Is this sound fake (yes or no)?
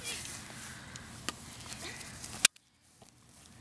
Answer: no